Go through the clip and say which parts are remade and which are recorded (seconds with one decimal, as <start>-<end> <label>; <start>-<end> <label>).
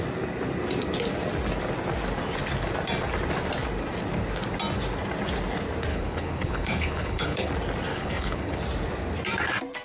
0.0-5.9 recorded; 5.9-7.5 remade; 7.5-7.9 recorded; 7.9-8.6 remade; 8.6-9.8 recorded